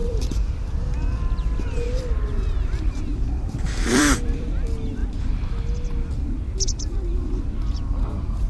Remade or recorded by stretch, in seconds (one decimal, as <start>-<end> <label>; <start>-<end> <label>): 0.0-2.0 remade; 2.0-3.1 recorded; 3.1-4.5 remade; 4.5-8.5 recorded